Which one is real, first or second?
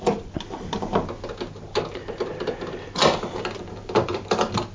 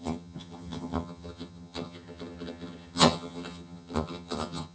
first